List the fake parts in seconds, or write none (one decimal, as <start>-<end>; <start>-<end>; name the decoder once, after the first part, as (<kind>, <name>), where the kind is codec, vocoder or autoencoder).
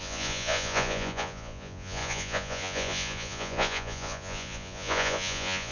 0.0-5.7 (vocoder, Vocos)